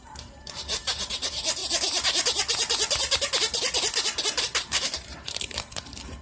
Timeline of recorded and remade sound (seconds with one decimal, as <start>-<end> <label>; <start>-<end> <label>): 0.0-1.6 remade; 1.6-4.4 recorded; 4.4-6.2 remade